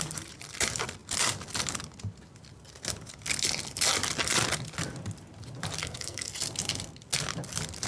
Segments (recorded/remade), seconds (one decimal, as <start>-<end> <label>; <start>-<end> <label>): 0.0-5.8 recorded; 5.8-6.3 remade; 6.3-7.9 recorded